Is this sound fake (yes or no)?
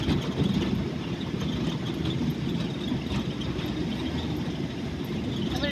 no